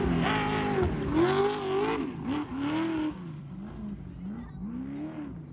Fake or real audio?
real